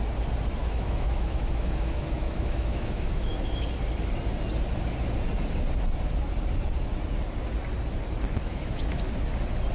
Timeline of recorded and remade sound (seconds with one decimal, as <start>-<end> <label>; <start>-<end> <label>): 0.0-0.6 recorded; 0.6-3.7 remade; 3.7-8.4 recorded; 8.4-9.0 remade; 9.0-9.7 recorded